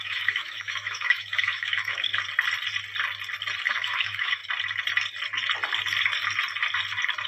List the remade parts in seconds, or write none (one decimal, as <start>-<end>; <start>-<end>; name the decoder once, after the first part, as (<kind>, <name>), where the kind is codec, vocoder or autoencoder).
0.0-2.1 (autoencoder, DAC-VAE); 3.7-4.4